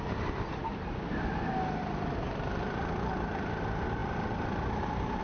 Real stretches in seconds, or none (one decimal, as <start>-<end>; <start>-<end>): 0.0-4.0